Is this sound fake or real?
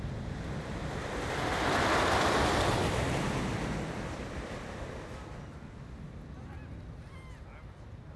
real